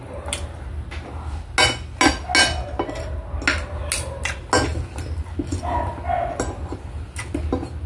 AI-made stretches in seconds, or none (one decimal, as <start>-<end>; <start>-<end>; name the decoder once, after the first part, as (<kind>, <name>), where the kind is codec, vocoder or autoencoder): none